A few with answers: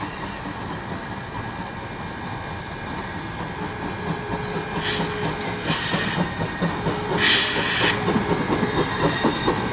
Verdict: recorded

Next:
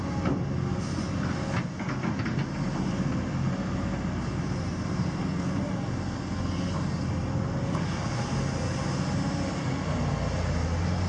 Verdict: recorded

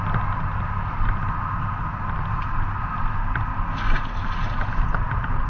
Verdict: recorded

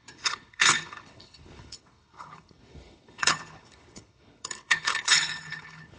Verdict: remade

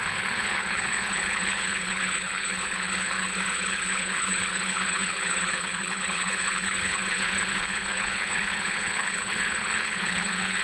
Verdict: remade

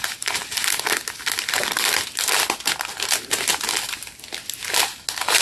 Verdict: recorded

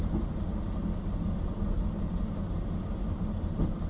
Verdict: recorded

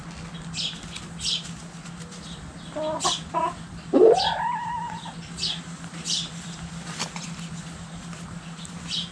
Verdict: recorded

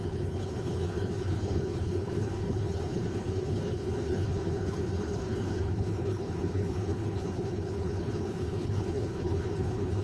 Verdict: remade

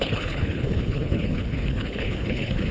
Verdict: remade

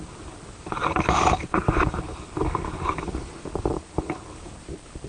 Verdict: recorded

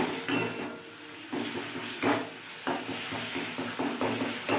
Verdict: recorded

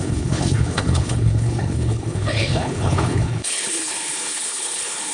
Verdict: remade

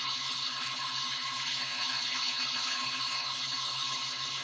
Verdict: remade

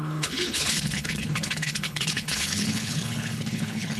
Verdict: remade